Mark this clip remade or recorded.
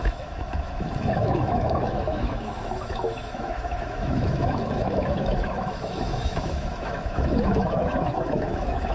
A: remade